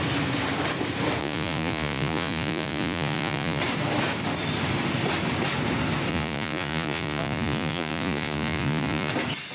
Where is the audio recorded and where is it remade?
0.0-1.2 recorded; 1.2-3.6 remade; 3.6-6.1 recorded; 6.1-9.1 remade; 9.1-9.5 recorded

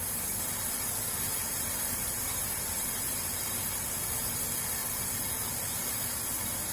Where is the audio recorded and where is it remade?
0.0-1.4 recorded; 1.4-3.5 remade; 3.5-4.8 recorded; 4.8-5.4 remade; 5.4-6.7 recorded

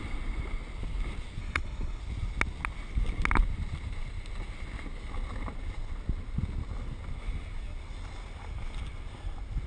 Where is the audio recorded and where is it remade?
0.0-1.4 recorded; 1.4-2.0 remade; 2.0-9.7 recorded

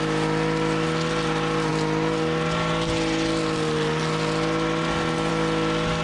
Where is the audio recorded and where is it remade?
0.0-6.0 recorded